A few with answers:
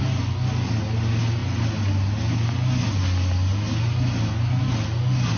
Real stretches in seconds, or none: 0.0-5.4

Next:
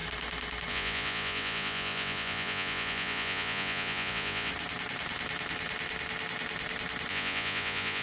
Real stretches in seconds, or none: 0.0-0.7; 4.5-7.1

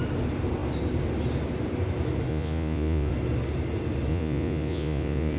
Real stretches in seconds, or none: 0.0-2.3; 3.1-4.1

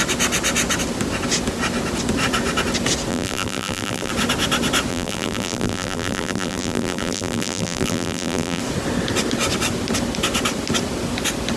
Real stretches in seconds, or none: 0.0-3.1; 4.1-4.9; 8.6-11.6

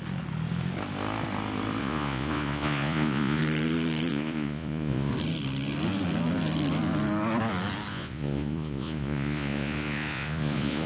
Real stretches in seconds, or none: 0.0-1.8; 3.4-4.1; 5.1-7.9